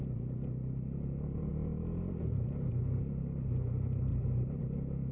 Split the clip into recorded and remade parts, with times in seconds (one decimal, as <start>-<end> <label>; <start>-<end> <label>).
0.0-1.5 recorded; 1.5-2.3 remade; 2.3-4.1 recorded; 4.1-4.6 remade; 4.6-5.1 recorded

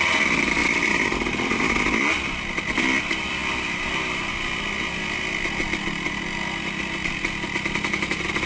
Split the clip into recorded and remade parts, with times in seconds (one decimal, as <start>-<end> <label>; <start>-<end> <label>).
0.0-8.5 recorded

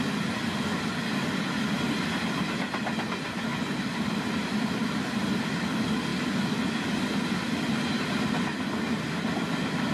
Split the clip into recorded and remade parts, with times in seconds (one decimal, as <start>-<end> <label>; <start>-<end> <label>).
0.0-9.9 recorded

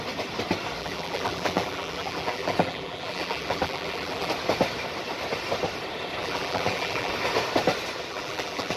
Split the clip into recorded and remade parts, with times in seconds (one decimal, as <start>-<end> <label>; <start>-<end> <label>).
0.0-0.8 recorded; 0.8-4.3 remade; 4.3-6.2 recorded; 6.2-7.1 remade; 7.1-8.1 recorded; 8.1-8.8 remade

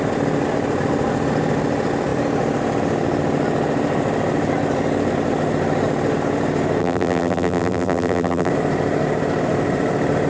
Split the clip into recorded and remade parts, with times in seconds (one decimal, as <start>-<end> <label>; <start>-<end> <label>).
0.0-6.8 recorded; 6.8-8.5 remade; 8.5-10.3 recorded

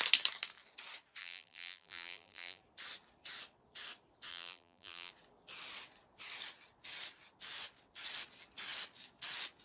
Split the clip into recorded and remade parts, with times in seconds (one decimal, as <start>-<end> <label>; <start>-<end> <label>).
0.0-1.2 recorded; 1.2-2.6 remade; 2.6-4.3 recorded; 4.3-5.1 remade; 5.1-9.6 recorded

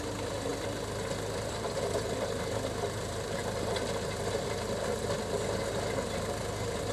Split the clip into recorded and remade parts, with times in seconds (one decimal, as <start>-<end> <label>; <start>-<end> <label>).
0.0-6.9 recorded